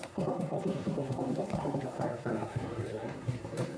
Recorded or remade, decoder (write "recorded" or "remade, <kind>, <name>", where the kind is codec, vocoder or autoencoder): remade, codec, SNAC